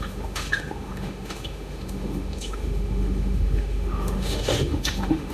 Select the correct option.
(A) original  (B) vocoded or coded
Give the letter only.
B